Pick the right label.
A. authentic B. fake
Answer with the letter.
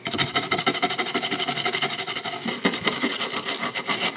A